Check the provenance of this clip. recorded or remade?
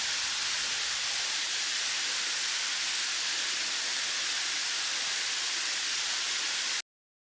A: recorded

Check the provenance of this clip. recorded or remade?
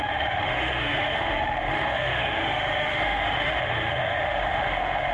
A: remade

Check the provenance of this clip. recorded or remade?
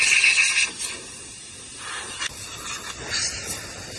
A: recorded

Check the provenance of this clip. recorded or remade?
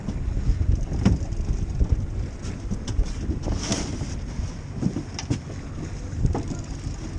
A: recorded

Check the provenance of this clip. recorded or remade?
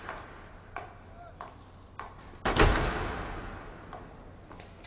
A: recorded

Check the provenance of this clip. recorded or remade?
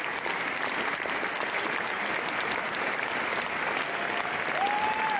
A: recorded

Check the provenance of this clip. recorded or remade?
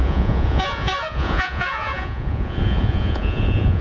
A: remade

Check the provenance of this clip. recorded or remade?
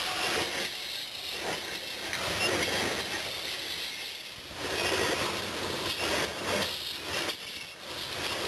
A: recorded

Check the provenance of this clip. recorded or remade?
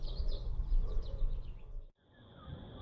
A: remade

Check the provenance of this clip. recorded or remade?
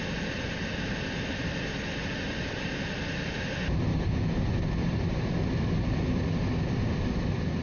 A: recorded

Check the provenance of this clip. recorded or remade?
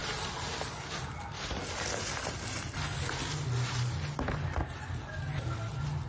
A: recorded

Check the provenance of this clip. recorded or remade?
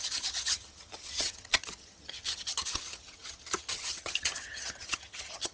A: remade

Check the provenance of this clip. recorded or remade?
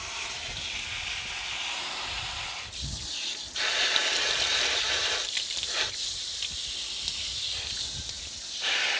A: recorded